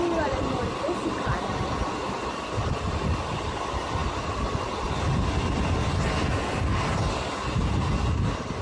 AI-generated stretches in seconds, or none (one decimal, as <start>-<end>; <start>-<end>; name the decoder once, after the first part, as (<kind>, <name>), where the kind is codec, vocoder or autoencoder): none

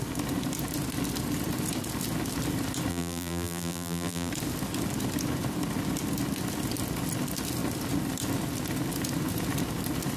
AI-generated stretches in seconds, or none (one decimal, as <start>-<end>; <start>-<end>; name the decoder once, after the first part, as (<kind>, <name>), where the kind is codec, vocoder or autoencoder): 2.9-4.3 (vocoder, BigVGAN v2)

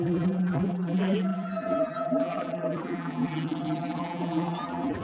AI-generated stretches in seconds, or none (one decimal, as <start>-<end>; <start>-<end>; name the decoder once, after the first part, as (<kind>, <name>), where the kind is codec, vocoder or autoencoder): 0.0-5.0 (vocoder, BigVGAN v2)

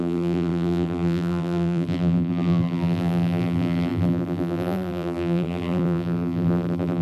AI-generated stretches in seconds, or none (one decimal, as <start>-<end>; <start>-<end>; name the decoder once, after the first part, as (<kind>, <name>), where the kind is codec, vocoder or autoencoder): 0.0-7.0 (vocoder, BigVGAN v2)

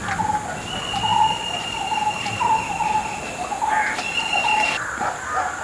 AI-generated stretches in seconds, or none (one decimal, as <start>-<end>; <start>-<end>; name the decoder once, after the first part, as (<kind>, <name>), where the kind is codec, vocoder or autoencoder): 1.1-4.5 (vocoder, BigVGAN v2)

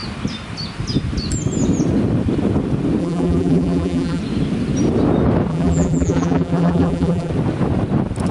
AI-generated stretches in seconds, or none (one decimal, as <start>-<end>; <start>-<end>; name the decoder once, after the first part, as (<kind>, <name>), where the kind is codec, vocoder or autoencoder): 3.0-4.2 (vocoder, BigVGAN v2); 5.5-7.3